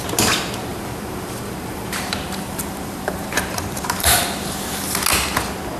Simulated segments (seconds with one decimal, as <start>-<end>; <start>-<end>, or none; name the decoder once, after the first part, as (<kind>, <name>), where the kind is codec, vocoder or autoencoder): 0.7-4.2 (vocoder, BigVGAN v2)